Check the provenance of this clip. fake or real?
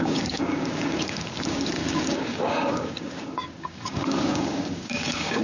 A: fake